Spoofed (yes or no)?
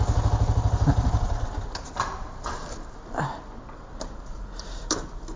no